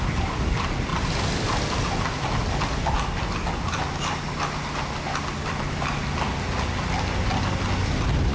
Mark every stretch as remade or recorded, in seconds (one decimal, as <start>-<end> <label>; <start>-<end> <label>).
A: 0.0-8.3 recorded